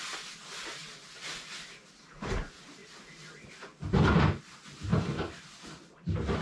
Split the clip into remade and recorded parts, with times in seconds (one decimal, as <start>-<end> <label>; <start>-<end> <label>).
0.0-0.8 recorded; 0.8-1.4 remade; 1.4-2.8 recorded; 2.8-4.4 remade; 4.4-4.9 recorded; 4.9-5.6 remade; 5.6-6.4 recorded